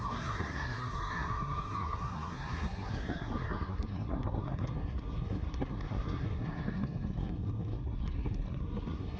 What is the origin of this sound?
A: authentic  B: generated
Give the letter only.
B